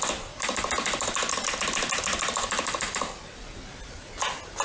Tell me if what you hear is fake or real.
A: real